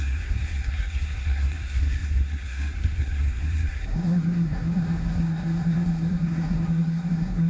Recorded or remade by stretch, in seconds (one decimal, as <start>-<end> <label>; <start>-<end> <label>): 0.0-7.5 remade